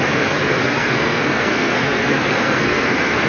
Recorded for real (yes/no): no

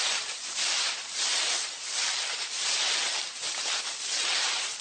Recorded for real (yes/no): no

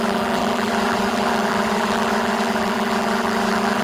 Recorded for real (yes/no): no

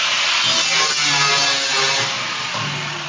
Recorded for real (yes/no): yes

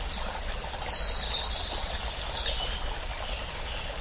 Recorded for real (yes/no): yes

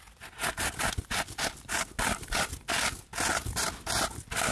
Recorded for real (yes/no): yes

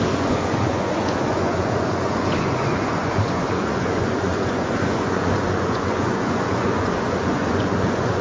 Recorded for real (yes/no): no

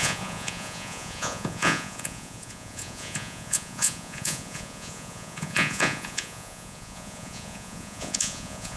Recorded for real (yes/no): no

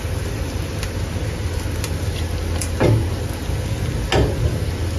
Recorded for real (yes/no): yes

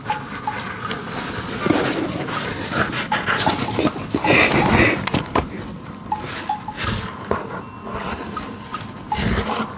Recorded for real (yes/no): yes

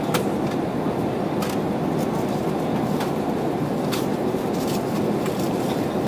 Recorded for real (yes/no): yes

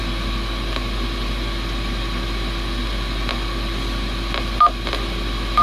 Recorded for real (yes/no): yes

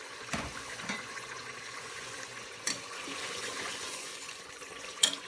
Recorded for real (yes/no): no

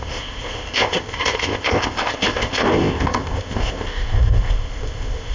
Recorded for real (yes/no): no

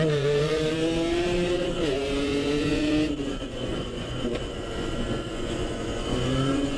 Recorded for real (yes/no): no